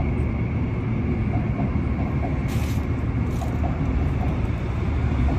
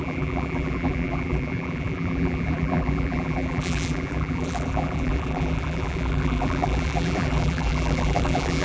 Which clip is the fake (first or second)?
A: second